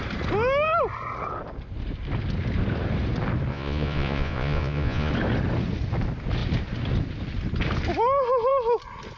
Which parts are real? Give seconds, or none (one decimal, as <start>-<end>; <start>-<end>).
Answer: 0.0-3.5; 5.1-9.2